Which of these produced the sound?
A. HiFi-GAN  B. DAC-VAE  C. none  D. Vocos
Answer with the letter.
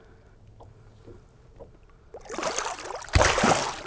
C